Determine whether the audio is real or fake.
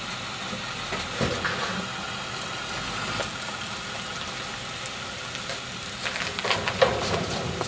real